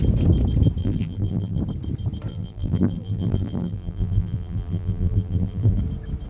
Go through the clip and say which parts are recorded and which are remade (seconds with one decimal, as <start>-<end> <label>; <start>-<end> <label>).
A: 0.0-0.8 recorded; 0.8-1.6 remade; 1.6-2.3 recorded; 2.3-5.8 remade; 5.8-6.3 recorded